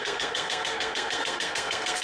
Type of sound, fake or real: fake